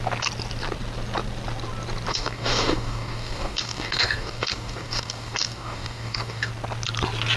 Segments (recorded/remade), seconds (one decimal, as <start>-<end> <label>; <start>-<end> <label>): 0.0-2.1 recorded; 2.1-6.5 remade; 6.5-7.4 recorded